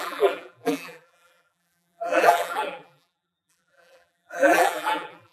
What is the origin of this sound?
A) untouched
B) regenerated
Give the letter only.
B